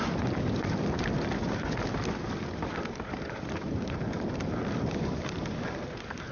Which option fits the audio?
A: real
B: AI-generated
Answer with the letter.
B